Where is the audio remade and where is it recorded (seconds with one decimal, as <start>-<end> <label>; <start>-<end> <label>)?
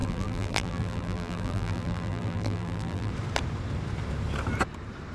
0.0-3.1 remade; 3.1-5.1 recorded